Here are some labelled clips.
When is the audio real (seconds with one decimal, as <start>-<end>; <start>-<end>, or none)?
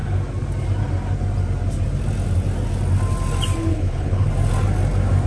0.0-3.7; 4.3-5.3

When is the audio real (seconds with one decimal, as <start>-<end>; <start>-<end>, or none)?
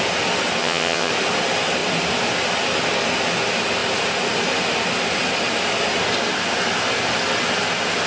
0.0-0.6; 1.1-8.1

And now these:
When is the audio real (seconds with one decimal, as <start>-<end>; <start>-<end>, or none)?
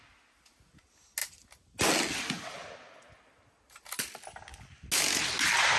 0.0-5.8